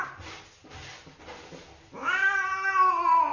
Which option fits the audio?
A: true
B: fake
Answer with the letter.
A